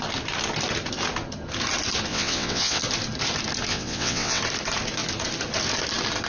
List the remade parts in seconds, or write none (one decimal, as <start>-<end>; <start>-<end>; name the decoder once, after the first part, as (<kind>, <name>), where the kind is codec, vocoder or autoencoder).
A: 2.1-2.8 (vocoder, WaveNeXt); 3.7-4.4

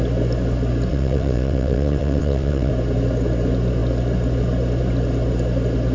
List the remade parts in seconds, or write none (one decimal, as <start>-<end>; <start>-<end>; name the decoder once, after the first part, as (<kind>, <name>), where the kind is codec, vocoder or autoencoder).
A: 0.9-2.7 (vocoder, WaveNeXt)

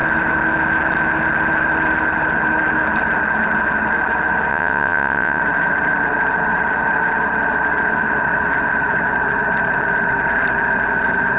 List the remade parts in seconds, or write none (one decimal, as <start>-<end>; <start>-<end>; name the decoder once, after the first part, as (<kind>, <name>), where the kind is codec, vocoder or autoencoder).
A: 4.5-5.4 (vocoder, WaveNeXt)

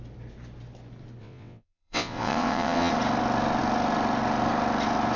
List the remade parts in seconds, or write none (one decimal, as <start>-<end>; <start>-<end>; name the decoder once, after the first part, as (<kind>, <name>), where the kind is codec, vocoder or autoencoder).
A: 1.2-2.9 (vocoder, WaveNeXt)

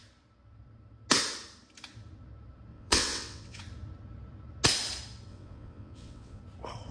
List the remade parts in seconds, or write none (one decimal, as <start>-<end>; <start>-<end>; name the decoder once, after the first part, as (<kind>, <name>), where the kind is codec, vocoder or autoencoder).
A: 2.7-3.6 (vocoder, WaveNeXt); 5.3-6.4

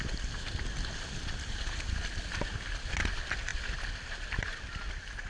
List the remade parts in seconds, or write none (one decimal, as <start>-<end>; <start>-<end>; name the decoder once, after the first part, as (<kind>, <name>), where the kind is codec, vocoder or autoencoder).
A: none

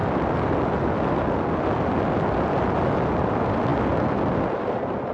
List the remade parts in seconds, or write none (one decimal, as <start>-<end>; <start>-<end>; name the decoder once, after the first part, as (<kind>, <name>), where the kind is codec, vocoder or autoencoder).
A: none

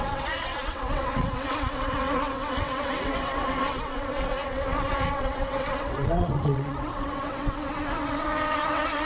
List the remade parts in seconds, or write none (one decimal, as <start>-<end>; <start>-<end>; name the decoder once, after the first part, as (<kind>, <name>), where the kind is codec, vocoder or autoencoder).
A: 0.0-9.0 (vocoder, WaveNeXt)